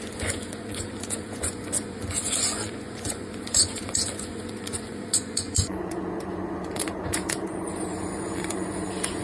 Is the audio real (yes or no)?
no